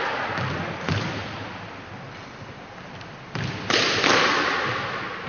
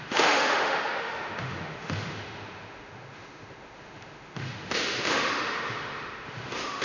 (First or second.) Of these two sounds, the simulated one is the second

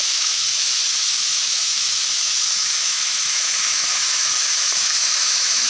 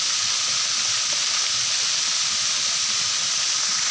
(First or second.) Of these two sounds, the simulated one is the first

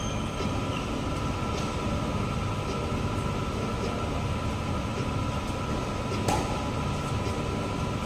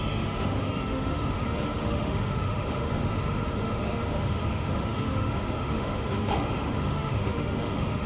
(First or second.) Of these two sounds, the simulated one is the second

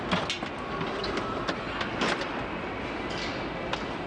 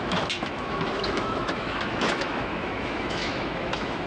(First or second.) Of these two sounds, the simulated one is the second